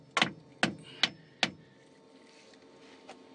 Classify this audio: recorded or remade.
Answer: recorded